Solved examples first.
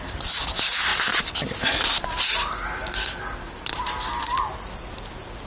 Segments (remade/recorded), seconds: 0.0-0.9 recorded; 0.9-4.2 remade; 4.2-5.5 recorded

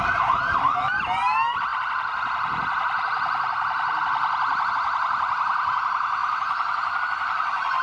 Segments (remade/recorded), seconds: 0.0-6.2 recorded; 6.2-7.0 remade; 7.0-7.8 recorded

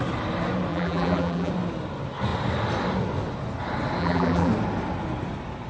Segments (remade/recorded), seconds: 0.0-0.7 recorded; 0.7-1.5 remade; 1.5-4.0 recorded; 4.0-4.5 remade; 4.5-5.7 recorded

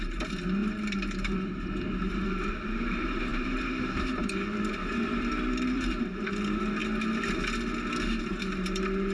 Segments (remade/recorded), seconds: 0.0-6.8 remade; 6.8-8.2 recorded; 8.2-9.1 remade

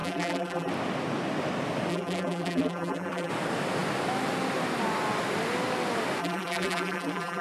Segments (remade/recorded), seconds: 0.0-0.7 remade; 0.7-1.9 recorded; 1.9-3.3 remade; 3.3-6.2 recorded; 6.2-7.4 remade

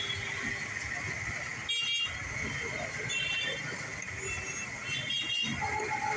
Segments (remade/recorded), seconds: 0.0-6.2 recorded